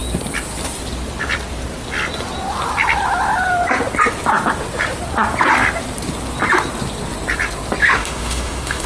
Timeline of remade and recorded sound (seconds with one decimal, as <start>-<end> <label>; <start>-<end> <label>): 0.0-7.8 recorded; 7.8-8.9 remade